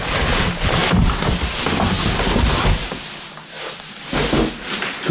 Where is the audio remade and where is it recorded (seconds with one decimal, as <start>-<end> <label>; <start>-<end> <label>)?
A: 0.0-5.1 recorded